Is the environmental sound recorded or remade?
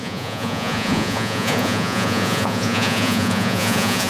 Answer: remade